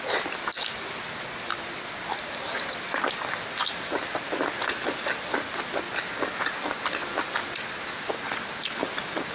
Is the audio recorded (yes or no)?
yes